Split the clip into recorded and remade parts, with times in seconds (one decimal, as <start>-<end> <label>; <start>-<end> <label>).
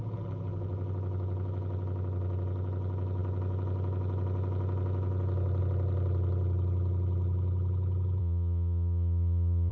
0.0-8.2 recorded; 8.2-9.7 remade